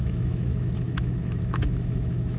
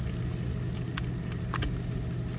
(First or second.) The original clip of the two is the second